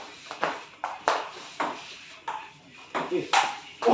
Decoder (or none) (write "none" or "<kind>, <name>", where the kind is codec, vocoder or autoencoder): none